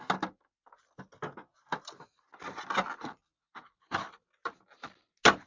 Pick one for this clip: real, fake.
real